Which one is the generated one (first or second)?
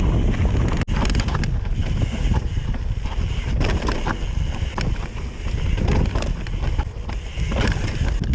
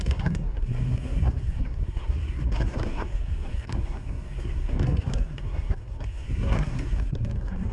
second